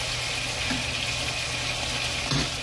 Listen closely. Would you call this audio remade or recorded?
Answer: recorded